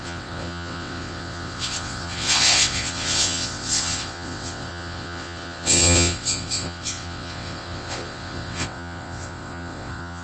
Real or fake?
fake